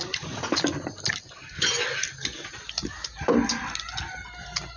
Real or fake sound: real